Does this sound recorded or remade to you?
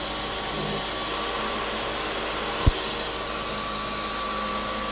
recorded